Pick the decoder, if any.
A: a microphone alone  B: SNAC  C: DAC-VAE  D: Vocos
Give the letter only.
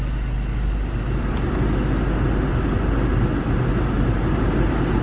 A